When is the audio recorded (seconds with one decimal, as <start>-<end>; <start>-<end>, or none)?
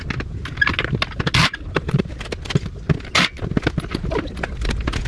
0.0-1.4; 2.0-5.1